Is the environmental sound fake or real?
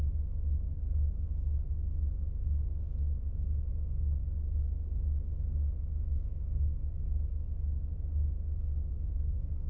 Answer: fake